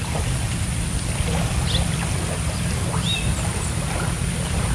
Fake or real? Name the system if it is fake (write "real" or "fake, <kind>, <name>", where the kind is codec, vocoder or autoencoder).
fake, vocoder, BigVGAN v2